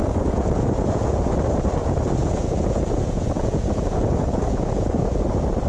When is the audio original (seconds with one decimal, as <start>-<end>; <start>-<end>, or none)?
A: 1.2-1.8; 5.2-5.7